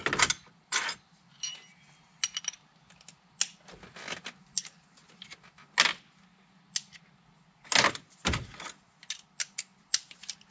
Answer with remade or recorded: recorded